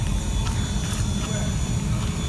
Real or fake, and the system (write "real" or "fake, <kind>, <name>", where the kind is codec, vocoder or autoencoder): fake, vocoder, BigVGAN v2